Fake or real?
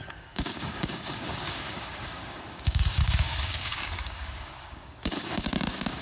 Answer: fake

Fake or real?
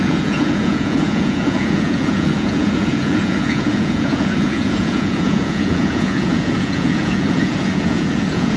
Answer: fake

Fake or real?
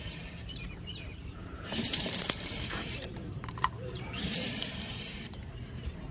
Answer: fake